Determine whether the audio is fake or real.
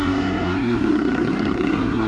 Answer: fake